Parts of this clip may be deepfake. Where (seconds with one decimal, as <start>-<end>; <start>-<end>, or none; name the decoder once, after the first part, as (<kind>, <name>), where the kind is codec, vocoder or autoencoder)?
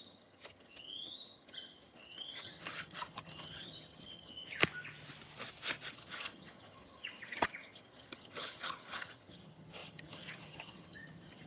0.0-4.6 (vocoder, HiFi-GAN); 5.9-11.5